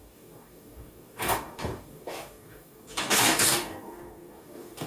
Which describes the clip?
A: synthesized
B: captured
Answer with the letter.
A